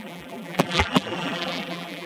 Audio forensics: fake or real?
fake